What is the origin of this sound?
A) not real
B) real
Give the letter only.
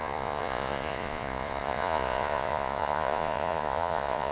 A